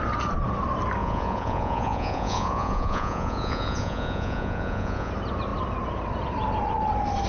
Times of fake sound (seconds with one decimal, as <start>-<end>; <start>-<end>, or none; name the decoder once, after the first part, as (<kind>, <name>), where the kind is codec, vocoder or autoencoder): 1.0-5.1 (vocoder, Vocos)